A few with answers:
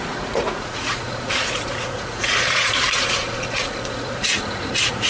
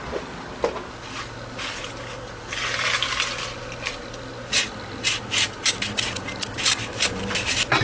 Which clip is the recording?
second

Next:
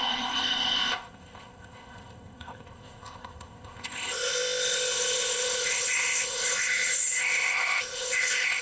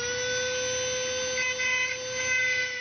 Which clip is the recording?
second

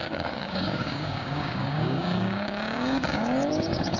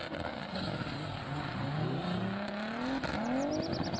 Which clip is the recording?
second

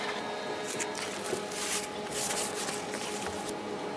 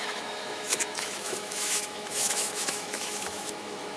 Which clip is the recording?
first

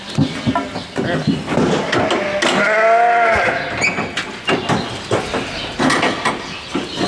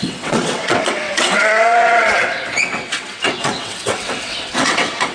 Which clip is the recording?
first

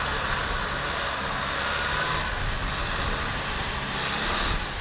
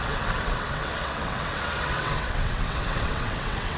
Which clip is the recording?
first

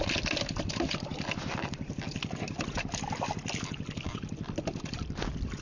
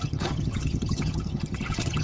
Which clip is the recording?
first